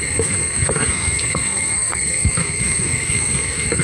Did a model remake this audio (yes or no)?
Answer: yes